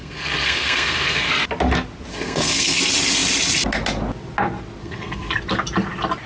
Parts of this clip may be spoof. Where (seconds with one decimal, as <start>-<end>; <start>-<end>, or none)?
0.0-1.3; 2.1-2.8; 4.8-5.3

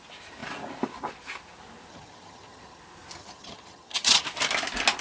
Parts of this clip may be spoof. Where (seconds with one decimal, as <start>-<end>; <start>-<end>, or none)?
1.9-2.8; 3.2-4.2

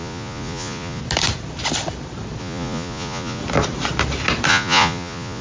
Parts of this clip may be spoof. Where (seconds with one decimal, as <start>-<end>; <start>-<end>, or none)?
0.0-1.0; 2.4-3.4; 4.5-5.4